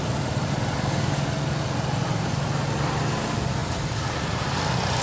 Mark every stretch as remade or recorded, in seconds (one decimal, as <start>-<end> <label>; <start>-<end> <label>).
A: 0.0-5.0 recorded